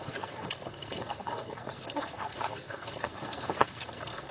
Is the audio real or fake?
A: fake